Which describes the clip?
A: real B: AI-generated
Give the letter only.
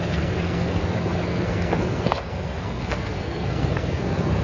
B